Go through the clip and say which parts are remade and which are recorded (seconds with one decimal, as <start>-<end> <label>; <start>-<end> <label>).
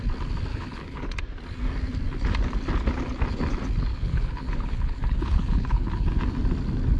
0.0-0.5 recorded; 0.5-1.2 remade; 1.2-3.9 recorded; 3.9-6.2 remade; 6.2-7.0 recorded